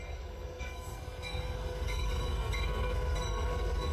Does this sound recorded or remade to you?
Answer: remade